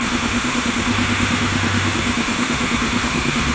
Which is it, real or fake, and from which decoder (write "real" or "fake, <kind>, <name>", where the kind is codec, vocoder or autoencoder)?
fake, autoencoder, DAC-VAE